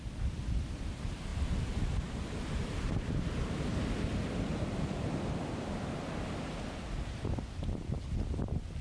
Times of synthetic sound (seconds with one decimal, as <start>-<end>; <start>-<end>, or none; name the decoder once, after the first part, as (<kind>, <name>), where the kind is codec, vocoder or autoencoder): none